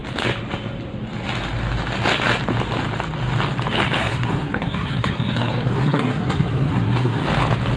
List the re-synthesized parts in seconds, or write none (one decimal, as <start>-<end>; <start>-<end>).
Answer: 4.0-7.2